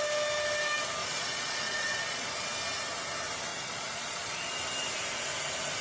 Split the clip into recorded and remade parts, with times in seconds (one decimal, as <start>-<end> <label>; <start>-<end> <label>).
0.0-1.0 recorded; 1.0-2.3 remade; 2.3-3.5 recorded; 3.5-4.6 remade; 4.6-5.8 recorded

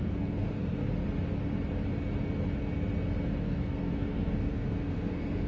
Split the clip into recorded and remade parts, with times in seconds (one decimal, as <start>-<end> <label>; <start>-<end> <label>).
0.0-0.8 remade; 0.8-3.4 recorded; 3.4-5.5 remade

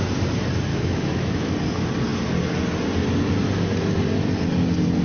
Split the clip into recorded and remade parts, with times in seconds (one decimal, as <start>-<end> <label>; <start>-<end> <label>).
0.0-0.7 recorded; 0.7-1.5 remade; 1.5-5.0 recorded

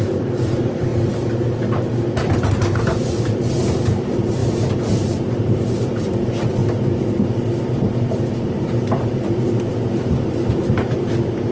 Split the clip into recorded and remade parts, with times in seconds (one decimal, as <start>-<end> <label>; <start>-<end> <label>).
0.0-0.9 remade; 0.9-2.5 recorded; 2.5-6.6 remade; 6.6-8.4 recorded; 8.4-11.5 remade

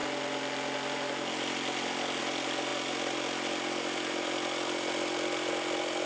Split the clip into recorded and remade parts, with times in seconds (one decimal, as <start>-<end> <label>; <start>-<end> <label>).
0.0-6.1 recorded

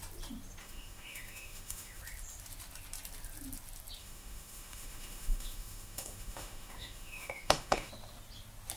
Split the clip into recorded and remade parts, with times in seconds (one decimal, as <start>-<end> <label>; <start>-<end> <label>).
0.0-0.6 recorded; 0.6-2.0 remade; 2.0-4.0 recorded; 4.0-7.9 remade; 7.9-8.8 recorded

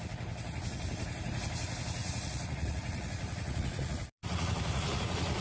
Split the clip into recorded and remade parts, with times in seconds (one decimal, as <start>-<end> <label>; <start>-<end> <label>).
0.0-2.0 recorded; 2.0-5.4 remade

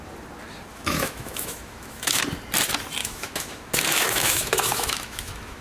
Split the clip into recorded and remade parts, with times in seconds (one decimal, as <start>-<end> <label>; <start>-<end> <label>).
0.0-0.7 recorded; 0.7-2.2 remade; 2.2-3.0 recorded; 3.0-5.6 remade